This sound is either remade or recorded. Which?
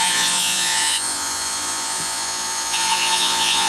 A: remade